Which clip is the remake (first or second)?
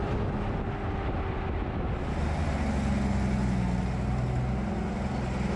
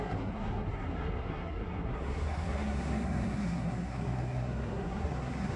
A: second